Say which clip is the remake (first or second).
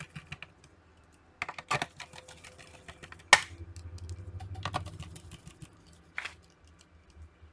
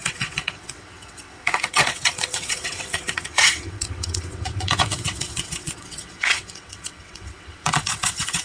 second